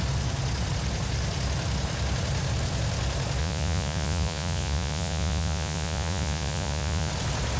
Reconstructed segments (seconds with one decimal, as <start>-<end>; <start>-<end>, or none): 3.4-7.1